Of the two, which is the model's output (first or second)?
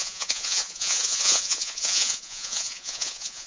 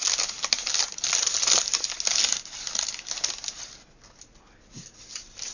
first